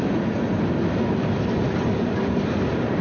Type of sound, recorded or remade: recorded